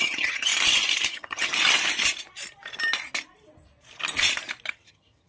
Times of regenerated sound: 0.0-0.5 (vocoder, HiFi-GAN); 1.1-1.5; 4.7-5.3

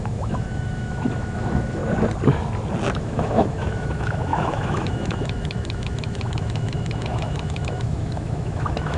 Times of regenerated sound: 0.0-1.8 (autoencoder, DAC-VAE); 2.9-9.0

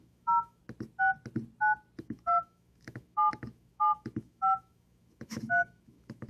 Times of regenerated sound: 0.0-0.6 (autoencoder, DAC-VAE); 2.0-6.3

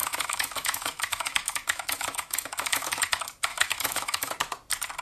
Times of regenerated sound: 0.0-3.0 (autoencoder, DAC-VAE); 3.5-4.3